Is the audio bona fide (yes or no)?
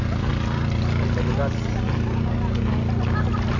yes